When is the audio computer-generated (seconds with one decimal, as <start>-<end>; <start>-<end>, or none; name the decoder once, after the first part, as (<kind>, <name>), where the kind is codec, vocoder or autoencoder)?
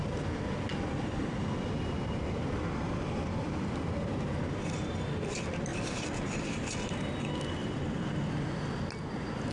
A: 0.9-1.6 (vocoder, BigVGAN v2); 5.7-7.1; 7.6-8.5